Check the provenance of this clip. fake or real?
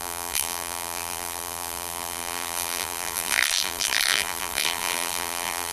fake